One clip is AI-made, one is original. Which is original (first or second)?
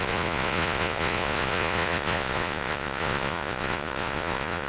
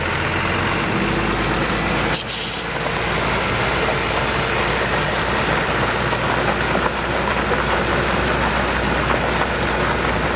second